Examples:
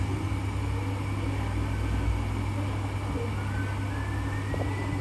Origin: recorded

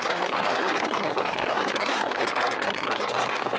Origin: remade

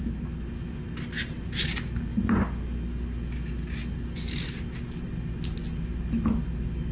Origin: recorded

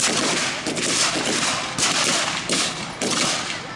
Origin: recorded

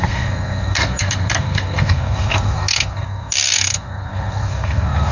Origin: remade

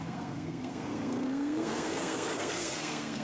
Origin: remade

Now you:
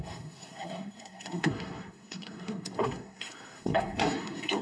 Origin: remade